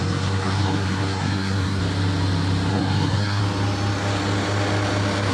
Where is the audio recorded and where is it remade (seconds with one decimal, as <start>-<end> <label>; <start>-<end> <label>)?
0.0-1.8 remade; 1.8-2.7 recorded; 2.7-3.4 remade; 3.4-5.3 recorded